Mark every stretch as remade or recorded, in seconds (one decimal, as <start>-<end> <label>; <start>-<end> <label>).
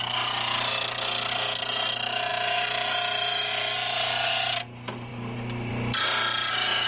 0.0-2.3 recorded; 2.3-3.5 remade; 3.5-6.9 recorded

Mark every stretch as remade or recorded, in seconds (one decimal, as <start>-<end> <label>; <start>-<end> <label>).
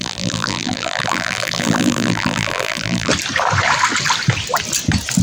0.0-3.1 remade; 3.1-5.2 recorded